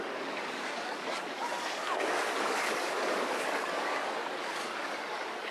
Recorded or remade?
remade